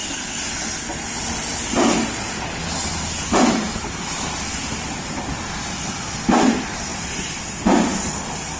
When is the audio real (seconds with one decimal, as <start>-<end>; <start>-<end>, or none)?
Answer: 0.0-3.6; 5.3-6.9; 7.4-8.6